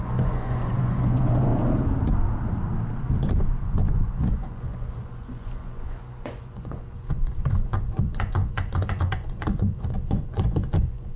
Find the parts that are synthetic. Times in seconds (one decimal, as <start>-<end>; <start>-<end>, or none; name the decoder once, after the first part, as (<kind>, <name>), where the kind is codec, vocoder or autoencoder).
0.0-1.5 (vocoder, Vocos); 3.9-11.2